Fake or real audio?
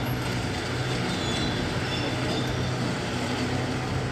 real